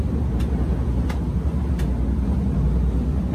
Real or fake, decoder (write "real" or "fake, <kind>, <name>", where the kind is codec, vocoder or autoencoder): real